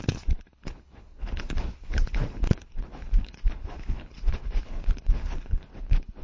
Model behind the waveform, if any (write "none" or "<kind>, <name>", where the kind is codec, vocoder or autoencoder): codec, HILCodec